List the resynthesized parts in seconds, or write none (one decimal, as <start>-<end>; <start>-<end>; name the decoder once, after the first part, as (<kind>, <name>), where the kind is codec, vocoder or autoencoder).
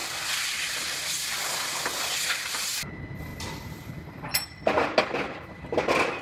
0.5-1.3 (vocoder, BigVGAN v2); 2.2-3.3; 5.0-6.2